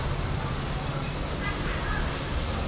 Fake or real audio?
fake